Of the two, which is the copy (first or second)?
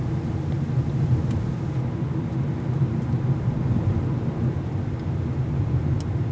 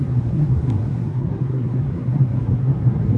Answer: second